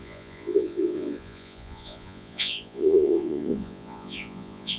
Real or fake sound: fake